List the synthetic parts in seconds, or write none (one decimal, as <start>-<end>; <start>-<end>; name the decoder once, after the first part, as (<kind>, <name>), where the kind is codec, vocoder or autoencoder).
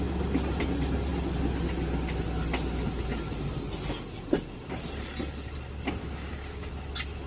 6.0-6.7 (codec, DAC)